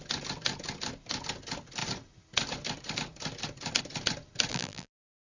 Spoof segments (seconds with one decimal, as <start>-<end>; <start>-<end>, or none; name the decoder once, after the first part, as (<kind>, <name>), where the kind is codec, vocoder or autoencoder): 4.5-5.4 (vocoder, BigVGAN v2)